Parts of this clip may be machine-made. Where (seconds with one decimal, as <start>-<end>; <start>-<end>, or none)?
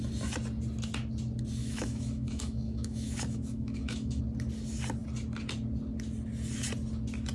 1.6-4.2